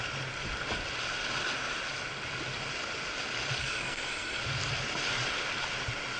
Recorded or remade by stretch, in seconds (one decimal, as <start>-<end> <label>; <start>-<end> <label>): 0.0-3.6 recorded; 3.6-4.4 remade; 4.4-6.2 recorded